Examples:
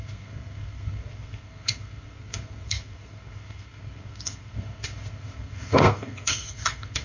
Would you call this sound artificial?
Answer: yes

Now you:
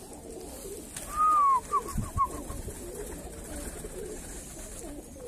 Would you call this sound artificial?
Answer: no